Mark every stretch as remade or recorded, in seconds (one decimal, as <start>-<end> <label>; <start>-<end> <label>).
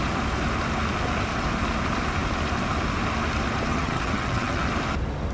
0.0-3.7 recorded; 3.7-4.7 remade; 4.7-5.3 recorded